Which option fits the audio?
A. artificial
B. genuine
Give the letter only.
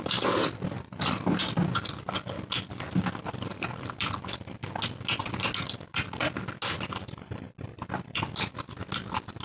B